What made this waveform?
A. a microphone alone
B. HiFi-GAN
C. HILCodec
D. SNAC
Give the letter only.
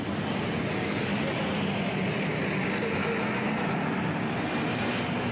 A